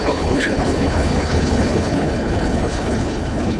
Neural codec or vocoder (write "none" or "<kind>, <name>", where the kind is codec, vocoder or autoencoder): codec, HILCodec